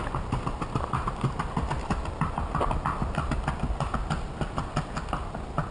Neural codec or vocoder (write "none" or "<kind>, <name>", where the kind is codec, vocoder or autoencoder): none